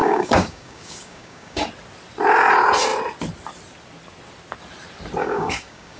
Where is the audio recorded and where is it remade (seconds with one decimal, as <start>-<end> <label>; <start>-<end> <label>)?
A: 0.0-1.6 remade; 1.6-5.2 recorded; 5.2-6.0 remade